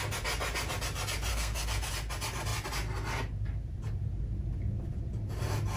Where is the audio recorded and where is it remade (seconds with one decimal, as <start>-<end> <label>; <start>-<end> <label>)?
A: 0.0-1.3 recorded; 1.3-1.9 remade; 1.9-5.8 recorded